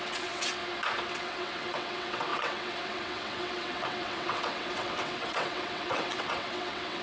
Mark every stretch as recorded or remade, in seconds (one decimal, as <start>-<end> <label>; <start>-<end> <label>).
0.0-0.6 remade; 0.6-1.1 recorded; 1.1-7.0 remade